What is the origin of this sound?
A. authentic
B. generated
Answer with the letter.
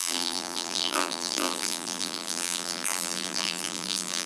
B